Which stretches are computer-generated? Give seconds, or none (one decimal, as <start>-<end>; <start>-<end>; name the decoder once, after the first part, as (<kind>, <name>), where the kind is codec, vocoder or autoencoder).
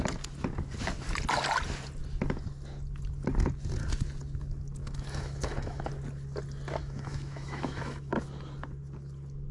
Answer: 4.8-5.9 (autoencoder, DAC-VAE); 6.8-8.1